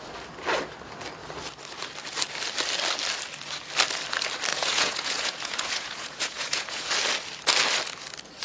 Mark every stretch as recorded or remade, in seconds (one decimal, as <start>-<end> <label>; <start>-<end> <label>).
0.0-4.5 recorded; 4.5-6.9 remade; 6.9-8.4 recorded